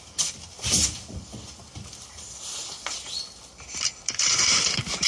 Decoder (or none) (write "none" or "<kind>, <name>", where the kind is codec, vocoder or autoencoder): none